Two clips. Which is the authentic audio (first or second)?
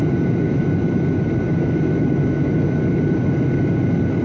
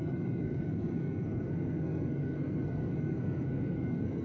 first